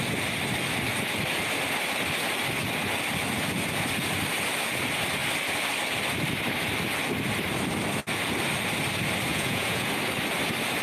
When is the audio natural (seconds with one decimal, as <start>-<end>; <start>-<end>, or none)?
0.0-9.3; 9.9-10.8